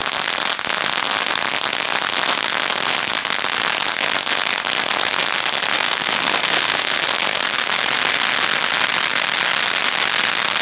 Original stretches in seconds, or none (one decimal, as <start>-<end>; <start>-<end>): 0.0-5.7; 7.0-10.6